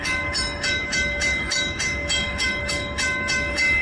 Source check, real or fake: fake